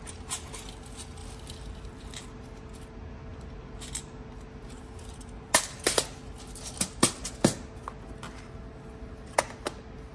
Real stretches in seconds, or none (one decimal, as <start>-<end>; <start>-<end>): 0.0-10.1